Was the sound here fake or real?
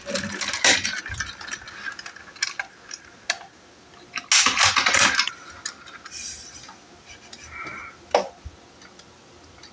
real